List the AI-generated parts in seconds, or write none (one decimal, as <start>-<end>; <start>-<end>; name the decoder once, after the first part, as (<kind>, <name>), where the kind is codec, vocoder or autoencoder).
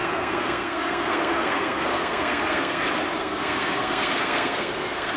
0.0-2.8 (codec, SNAC); 3.2-5.2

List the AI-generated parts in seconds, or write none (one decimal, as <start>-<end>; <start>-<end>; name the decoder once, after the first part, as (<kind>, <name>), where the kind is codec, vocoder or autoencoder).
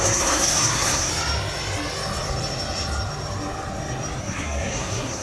0.0-1.1 (codec, SNAC); 4.2-5.2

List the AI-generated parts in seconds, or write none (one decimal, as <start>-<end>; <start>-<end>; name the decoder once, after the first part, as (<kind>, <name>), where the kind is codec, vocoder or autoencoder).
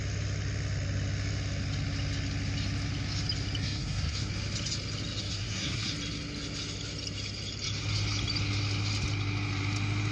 3.6-4.3 (codec, SNAC); 5.2-5.9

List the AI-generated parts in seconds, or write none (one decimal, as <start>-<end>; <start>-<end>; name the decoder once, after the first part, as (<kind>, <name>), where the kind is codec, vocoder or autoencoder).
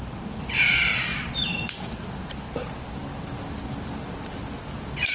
none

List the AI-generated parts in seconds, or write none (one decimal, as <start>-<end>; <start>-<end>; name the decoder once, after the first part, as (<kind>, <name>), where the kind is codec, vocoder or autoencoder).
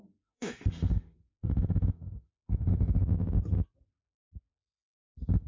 0.0-3.0 (autoencoder, DAC-VAE); 5.1-5.5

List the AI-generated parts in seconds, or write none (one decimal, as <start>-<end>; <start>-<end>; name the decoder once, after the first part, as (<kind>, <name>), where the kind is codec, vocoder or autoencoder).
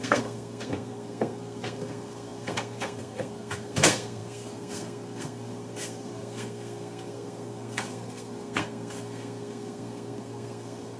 0.0-11.0 (codec, SNAC)